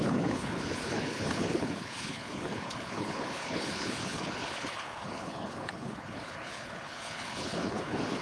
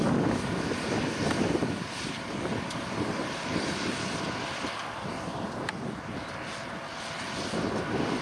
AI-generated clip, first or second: first